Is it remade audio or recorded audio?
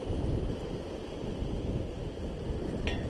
recorded